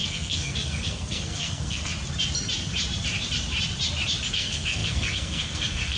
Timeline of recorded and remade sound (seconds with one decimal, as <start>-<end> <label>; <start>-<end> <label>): 0.0-1.9 remade; 1.9-4.3 recorded; 4.3-6.0 remade